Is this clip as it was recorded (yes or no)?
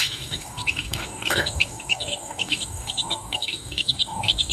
no